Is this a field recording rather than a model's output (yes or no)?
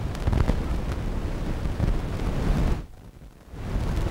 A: yes